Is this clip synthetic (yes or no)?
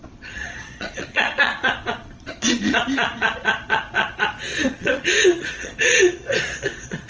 yes